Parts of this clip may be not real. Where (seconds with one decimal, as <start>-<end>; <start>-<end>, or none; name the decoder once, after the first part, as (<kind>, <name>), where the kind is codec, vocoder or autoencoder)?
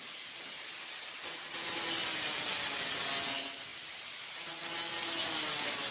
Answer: none